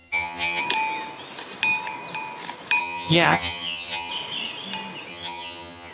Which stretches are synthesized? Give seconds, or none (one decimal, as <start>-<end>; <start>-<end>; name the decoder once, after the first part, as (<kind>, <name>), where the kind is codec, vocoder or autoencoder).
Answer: 0.0-0.6 (vocoder, HiFi-GAN); 2.8-4.1; 5.1-5.9